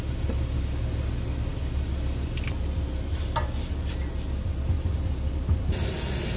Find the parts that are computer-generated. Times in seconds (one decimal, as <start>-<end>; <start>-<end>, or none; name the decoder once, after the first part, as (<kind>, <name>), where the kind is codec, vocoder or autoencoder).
none